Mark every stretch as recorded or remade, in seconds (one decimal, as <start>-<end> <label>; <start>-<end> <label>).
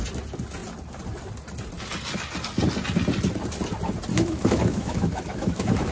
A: 0.0-4.1 recorded; 4.1-5.9 remade